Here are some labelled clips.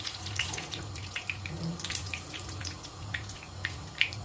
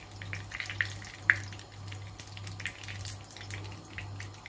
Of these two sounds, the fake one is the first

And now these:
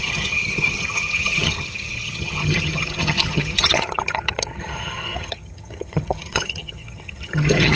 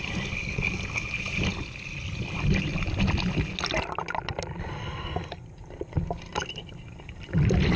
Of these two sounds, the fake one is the first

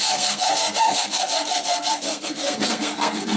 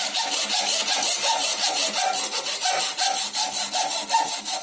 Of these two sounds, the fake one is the first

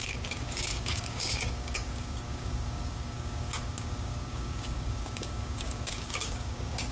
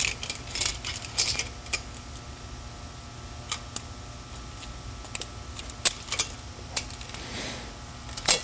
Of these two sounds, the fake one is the first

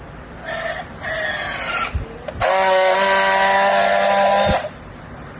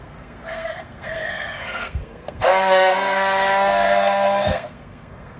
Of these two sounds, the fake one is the second